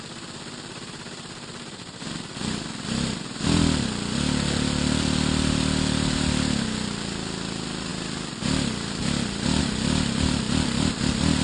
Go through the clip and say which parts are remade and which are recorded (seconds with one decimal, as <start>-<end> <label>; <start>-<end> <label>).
0.0-11.4 remade